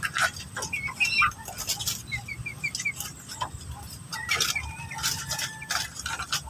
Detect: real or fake real